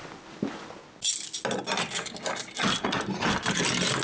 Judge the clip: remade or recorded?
recorded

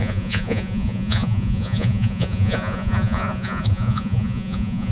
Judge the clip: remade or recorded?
remade